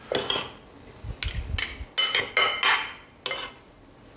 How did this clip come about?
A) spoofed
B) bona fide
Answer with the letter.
B